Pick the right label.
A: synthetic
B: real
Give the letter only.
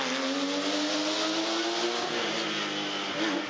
B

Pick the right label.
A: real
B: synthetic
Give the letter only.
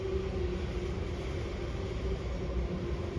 A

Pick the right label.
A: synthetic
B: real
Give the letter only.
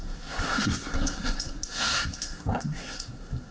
A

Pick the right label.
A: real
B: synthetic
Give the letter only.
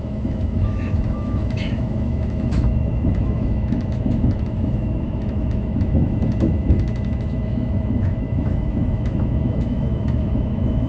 B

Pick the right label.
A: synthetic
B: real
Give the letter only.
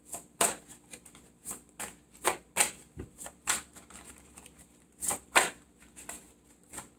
B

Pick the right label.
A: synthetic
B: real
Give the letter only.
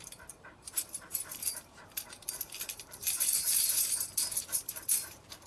A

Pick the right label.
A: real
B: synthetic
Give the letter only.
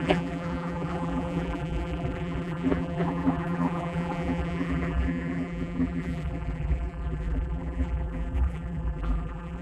B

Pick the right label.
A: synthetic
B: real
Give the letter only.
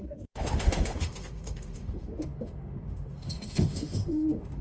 A